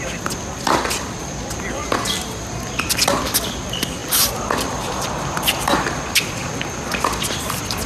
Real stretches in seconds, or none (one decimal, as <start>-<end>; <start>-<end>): 1.8-3.2